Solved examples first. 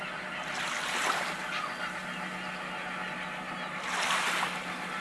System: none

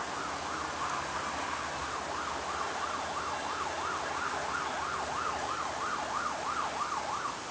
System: none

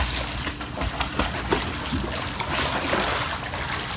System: none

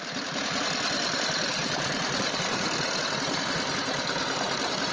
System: none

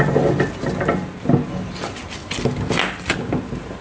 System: none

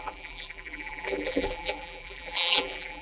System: vocoder, BigVGAN v2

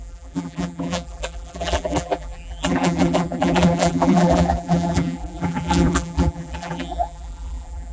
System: vocoder, BigVGAN v2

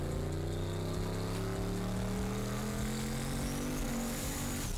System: none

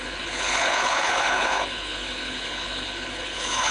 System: codec, HILCodec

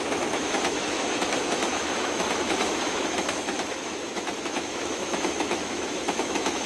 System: autoencoder, DAC-VAE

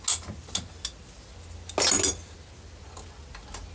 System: none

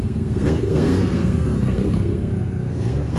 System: codec, SNAC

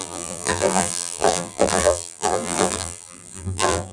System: vocoder, BigVGAN v2